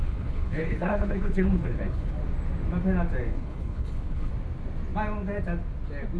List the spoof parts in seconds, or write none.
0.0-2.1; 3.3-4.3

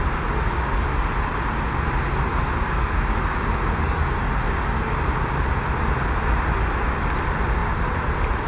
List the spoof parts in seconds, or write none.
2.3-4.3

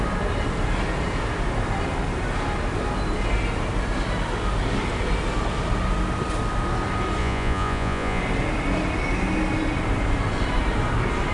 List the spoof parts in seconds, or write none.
7.2-8.2

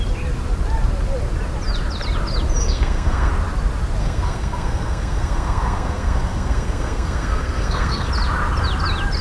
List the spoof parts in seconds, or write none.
2.6-3.3; 4.0-8.1

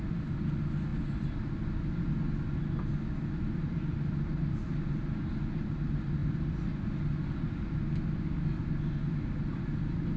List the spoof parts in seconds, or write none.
none